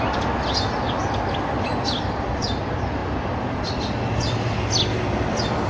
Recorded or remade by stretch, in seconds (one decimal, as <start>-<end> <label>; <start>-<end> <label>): 0.0-5.7 recorded